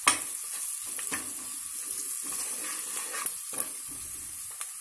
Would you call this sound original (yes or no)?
yes